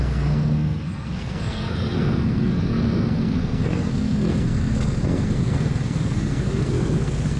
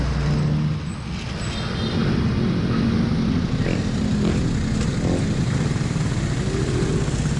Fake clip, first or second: first